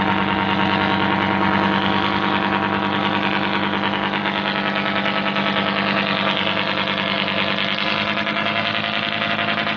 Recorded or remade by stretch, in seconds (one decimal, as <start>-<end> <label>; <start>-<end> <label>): 0.0-9.8 recorded